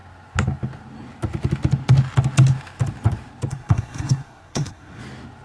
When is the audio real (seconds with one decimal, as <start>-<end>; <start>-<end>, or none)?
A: 0.0-3.5; 5.0-5.4